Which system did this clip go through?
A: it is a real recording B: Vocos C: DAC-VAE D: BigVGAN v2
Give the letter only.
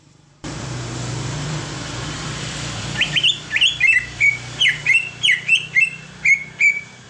D